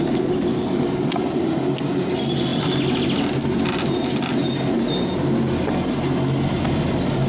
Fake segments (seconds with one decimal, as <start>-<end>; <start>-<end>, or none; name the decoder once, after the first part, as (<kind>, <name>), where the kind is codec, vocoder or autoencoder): none